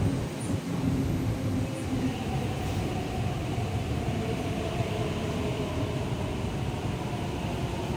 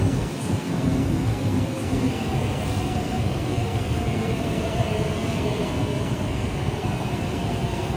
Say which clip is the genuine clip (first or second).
first